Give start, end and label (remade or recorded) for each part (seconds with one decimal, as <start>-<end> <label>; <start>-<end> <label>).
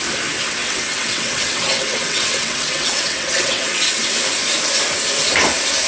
0.0-0.6 recorded; 0.6-4.1 remade; 4.1-5.9 recorded